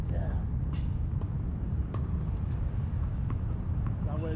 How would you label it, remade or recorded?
recorded